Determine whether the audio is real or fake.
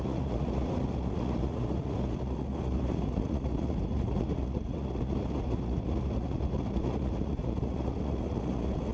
fake